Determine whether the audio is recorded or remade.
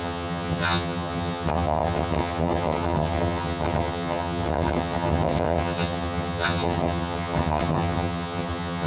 remade